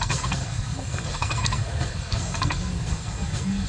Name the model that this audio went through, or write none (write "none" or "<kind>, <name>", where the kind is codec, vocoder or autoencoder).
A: codec, SNAC